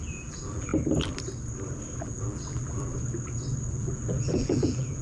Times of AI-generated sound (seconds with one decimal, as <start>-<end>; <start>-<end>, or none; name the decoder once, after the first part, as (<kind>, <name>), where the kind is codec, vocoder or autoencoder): 0.0-0.7 (vocoder, BigVGAN v2); 2.0-2.9; 3.7-5.0